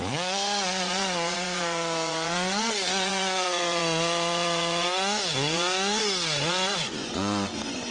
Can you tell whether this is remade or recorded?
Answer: remade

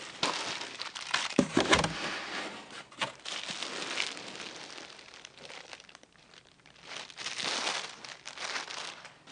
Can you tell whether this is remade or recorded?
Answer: recorded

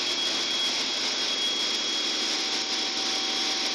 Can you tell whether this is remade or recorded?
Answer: recorded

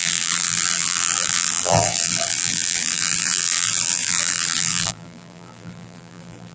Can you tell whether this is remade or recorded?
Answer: remade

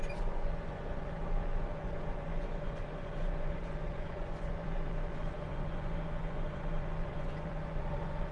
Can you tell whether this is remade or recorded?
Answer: remade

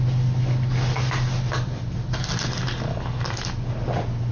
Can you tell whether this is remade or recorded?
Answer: recorded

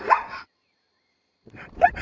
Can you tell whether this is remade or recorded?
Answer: remade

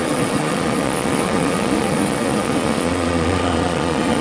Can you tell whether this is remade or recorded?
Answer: remade